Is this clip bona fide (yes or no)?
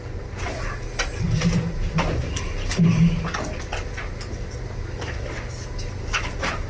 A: yes